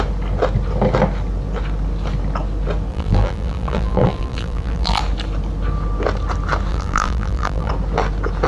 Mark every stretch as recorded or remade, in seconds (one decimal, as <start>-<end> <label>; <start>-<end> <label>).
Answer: 0.0-2.9 recorded; 2.9-5.0 remade; 5.0-6.7 recorded; 6.7-7.7 remade; 7.7-8.5 recorded